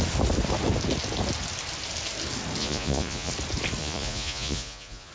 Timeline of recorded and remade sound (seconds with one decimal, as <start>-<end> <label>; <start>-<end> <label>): 0.0-2.6 recorded; 2.6-3.3 remade; 3.3-3.8 recorded; 3.8-5.1 remade